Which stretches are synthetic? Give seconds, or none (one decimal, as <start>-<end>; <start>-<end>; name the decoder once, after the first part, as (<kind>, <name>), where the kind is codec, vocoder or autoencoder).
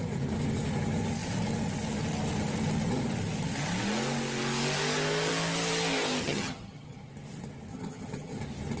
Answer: 6.2-7.1 (vocoder, HiFi-GAN); 7.7-8.4